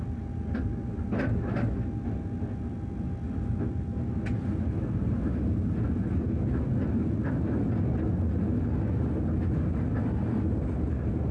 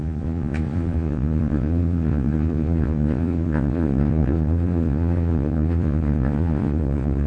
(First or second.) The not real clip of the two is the second